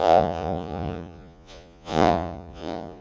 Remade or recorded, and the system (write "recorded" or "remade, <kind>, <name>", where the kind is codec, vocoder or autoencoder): remade, vocoder, Vocos